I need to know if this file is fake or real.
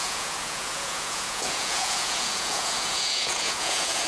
fake